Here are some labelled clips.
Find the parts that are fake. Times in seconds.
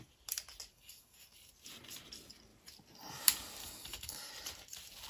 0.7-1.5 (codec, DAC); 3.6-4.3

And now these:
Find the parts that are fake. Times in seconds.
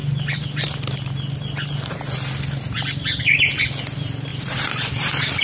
4.3-5.4 (vocoder, BigVGAN v2)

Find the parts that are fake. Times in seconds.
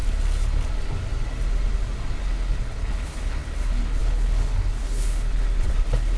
2.2-6.2 (codec, HILCodec)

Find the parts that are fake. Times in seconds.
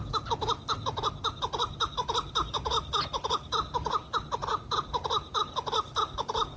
none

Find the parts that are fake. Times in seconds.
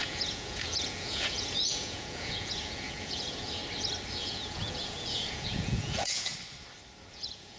0.0-3.6 (vocoder, Vocos); 4.2-6.3; 7.1-7.6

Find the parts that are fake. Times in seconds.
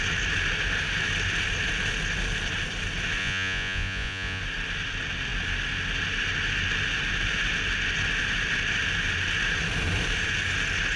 3.2-4.4 (vocoder, Vocos)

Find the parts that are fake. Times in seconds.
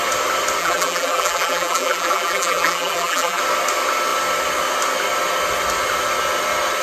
0.6-3.4 (vocoder, BigVGAN v2)